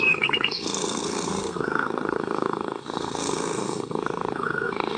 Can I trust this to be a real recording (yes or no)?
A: no